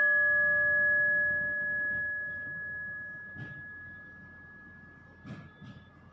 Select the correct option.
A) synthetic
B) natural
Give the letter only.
B